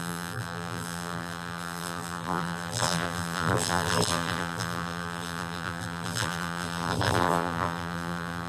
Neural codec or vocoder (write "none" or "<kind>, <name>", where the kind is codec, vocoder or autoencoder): vocoder, BigVGAN v2